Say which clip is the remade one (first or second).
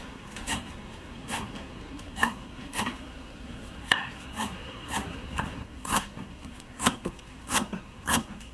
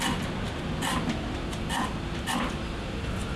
first